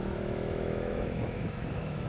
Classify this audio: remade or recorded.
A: remade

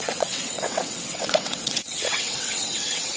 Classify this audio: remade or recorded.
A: remade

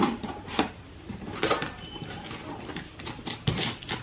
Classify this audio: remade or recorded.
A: remade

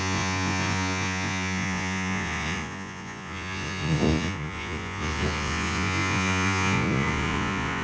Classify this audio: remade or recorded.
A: remade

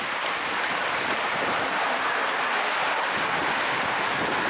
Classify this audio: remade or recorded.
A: recorded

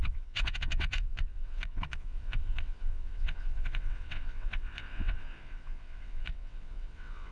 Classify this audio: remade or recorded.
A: remade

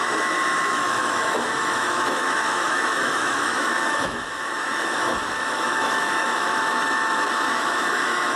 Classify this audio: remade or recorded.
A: remade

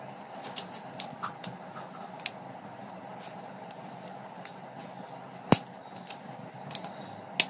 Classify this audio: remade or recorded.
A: recorded